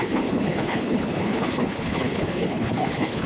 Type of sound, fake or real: fake